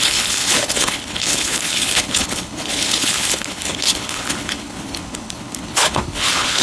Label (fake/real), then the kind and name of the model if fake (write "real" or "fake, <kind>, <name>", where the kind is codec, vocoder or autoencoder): fake, codec, HILCodec